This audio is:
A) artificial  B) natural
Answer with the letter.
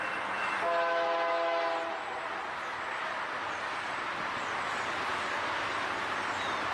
B